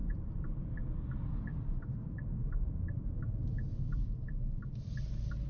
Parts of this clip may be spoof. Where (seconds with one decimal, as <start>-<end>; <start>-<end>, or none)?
0.0-0.6; 1.5-4.8

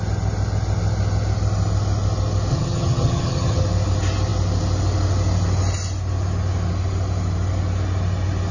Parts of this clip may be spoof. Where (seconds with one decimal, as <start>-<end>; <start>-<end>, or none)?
2.5-3.6

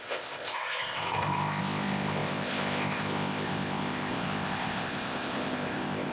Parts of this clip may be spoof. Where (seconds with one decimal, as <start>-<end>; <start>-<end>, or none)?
0.0-6.1

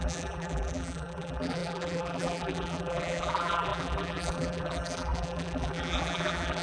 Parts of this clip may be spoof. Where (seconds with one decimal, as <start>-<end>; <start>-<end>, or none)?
0.0-6.6

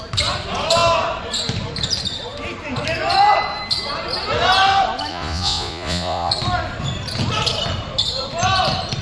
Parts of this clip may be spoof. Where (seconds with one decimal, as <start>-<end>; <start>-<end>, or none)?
5.1-6.3

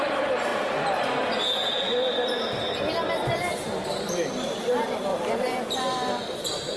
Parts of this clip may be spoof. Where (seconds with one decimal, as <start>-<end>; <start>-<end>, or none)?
5.1-5.8